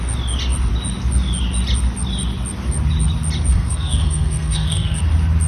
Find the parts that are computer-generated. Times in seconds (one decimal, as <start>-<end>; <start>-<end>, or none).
3.5-5.0